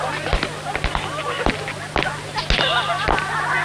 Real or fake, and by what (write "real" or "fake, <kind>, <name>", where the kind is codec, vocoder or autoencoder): real